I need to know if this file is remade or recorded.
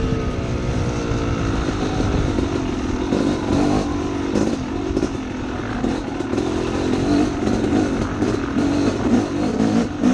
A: recorded